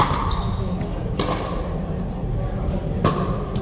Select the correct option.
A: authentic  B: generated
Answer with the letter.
A